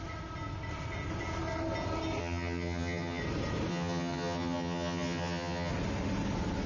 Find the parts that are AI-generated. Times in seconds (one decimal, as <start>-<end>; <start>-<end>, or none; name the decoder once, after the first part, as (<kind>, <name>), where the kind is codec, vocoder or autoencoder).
2.2-3.2 (vocoder, HiFi-GAN); 3.7-5.7